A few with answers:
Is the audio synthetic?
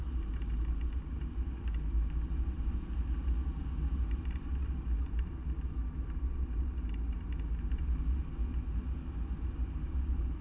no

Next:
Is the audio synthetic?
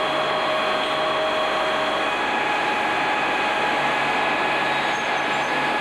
no